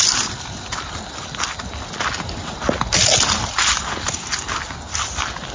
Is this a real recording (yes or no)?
yes